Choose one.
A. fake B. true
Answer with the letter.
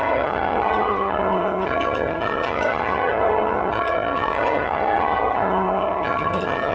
A